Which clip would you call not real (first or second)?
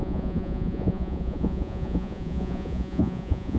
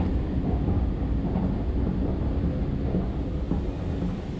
first